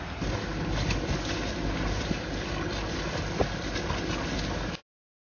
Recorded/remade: recorded